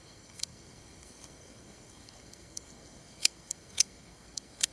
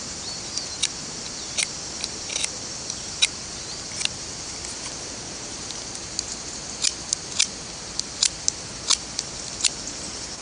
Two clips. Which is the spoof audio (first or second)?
first